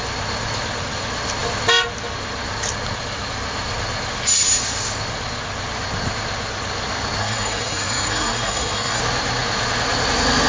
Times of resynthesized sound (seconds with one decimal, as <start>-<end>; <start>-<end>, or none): 7.2-9.0